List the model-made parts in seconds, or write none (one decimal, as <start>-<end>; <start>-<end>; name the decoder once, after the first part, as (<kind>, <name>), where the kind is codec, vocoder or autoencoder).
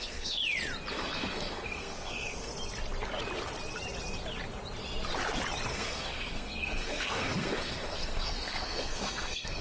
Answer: 0.0-0.4 (codec, SNAC); 0.9-2.5; 5.7-9.6